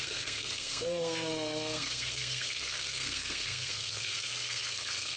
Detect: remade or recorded remade